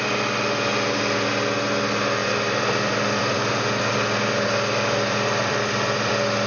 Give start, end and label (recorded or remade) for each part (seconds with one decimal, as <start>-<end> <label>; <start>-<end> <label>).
0.0-2.2 recorded; 2.2-6.1 remade; 6.1-6.5 recorded